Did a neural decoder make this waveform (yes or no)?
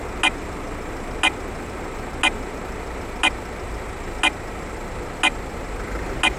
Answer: no